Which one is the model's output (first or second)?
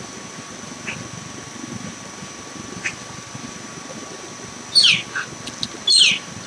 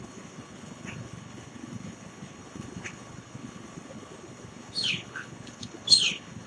second